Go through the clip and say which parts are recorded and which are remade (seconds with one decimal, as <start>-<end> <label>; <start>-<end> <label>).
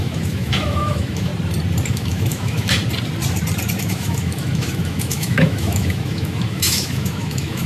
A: 0.0-1.3 remade; 1.3-1.9 recorded; 1.9-2.8 remade; 2.8-3.7 recorded; 3.7-7.7 remade